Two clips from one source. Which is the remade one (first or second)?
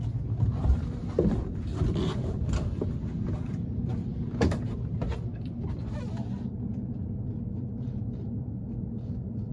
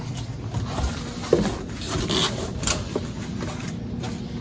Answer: first